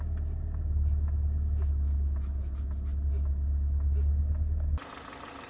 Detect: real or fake real